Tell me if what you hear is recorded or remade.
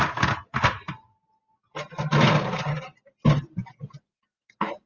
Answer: recorded